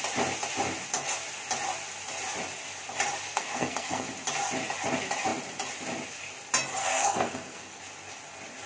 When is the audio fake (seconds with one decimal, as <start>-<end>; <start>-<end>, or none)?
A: 3.3-4.1; 6.8-7.8